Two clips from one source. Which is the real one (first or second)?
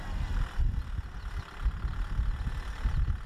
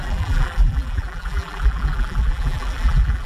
first